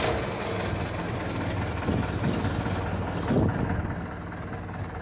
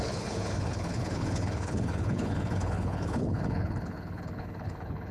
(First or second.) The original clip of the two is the first